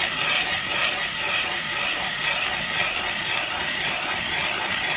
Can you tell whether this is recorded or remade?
recorded